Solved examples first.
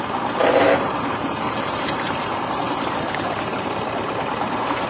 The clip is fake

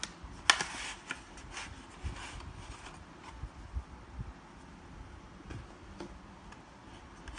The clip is real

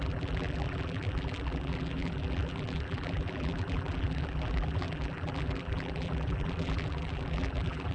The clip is fake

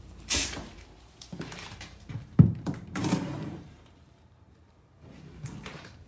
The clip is fake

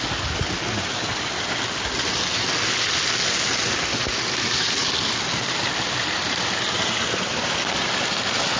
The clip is real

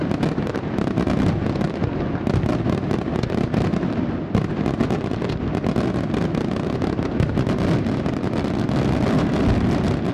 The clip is real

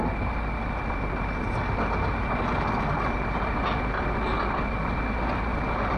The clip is real